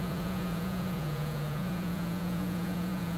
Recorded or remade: remade